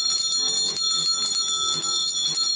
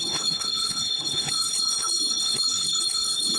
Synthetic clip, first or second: second